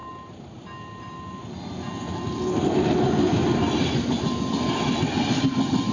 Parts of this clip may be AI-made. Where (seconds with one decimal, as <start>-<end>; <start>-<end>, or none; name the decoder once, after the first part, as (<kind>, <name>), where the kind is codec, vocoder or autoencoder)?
none